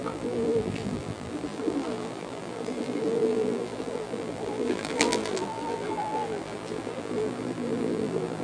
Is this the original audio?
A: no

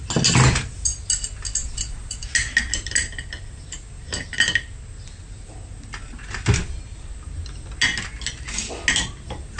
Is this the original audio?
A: yes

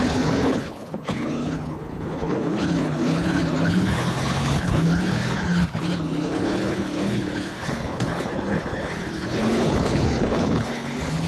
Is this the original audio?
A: no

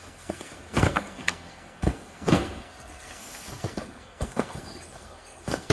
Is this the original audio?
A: no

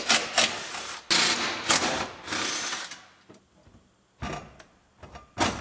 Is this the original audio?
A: yes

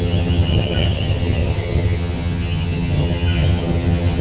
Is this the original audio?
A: no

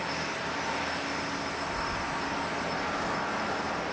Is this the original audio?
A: yes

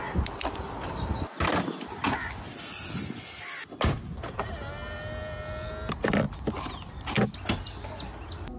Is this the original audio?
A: yes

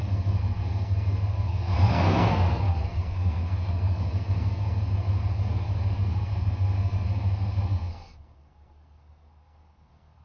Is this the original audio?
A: no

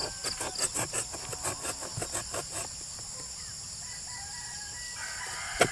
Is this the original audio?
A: yes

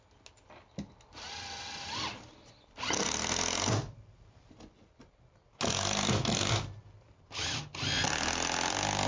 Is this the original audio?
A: yes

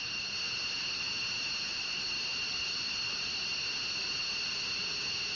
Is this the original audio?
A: yes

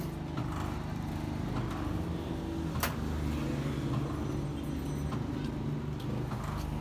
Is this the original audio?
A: yes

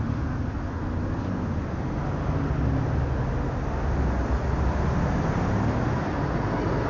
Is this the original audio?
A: yes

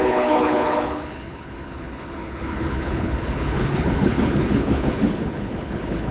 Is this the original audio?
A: no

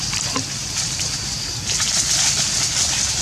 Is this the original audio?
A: no